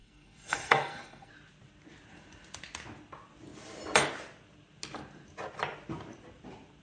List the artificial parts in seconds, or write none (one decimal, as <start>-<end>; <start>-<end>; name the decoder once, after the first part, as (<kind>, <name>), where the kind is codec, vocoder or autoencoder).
0.0-1.3 (codec, SNAC)